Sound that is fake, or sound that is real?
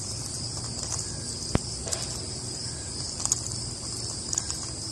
real